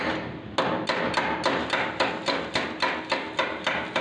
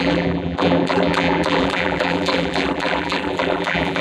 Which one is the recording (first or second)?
first